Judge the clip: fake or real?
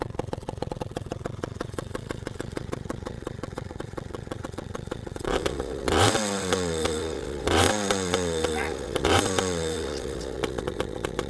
fake